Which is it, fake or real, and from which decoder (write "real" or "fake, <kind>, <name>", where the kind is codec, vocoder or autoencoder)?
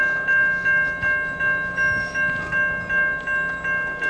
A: real